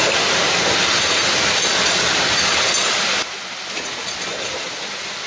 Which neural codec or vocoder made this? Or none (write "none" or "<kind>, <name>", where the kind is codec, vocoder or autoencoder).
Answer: none